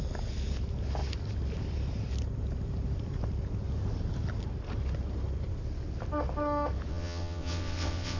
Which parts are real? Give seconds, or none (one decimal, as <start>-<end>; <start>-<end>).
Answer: 0.0-6.9